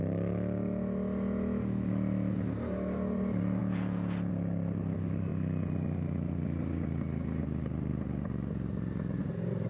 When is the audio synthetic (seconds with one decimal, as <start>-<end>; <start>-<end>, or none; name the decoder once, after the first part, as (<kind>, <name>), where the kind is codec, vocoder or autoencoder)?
3.6-4.3 (vocoder, Vocos)

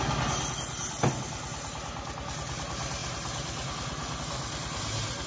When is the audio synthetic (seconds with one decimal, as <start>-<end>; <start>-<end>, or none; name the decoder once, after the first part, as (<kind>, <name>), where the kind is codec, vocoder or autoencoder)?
none

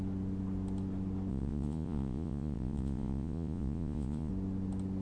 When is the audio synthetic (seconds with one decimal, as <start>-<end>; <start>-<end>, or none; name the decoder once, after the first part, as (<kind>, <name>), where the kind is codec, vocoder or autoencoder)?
1.3-4.3 (vocoder, Vocos)